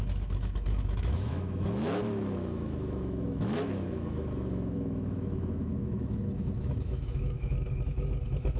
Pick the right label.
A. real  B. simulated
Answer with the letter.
B